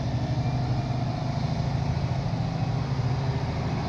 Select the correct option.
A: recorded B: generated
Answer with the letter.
A